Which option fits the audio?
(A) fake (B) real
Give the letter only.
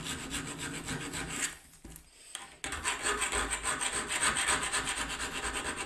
B